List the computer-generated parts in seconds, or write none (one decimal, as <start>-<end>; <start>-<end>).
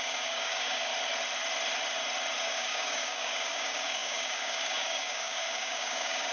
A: 0.0-0.9; 2.4-6.3